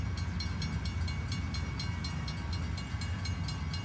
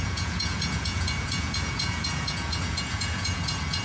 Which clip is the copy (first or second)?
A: second